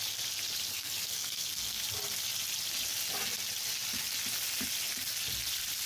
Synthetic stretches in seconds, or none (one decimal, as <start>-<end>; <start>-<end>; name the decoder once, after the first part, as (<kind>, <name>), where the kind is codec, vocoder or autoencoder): 0.7-1.8 (codec, SNAC)